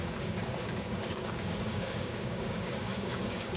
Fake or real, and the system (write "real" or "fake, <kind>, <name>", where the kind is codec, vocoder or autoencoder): fake, codec, DAC